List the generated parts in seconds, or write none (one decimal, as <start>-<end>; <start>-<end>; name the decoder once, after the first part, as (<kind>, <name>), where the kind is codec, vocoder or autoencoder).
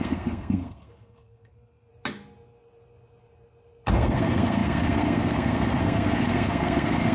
0.0-1.9 (codec, SNAC); 3.9-7.1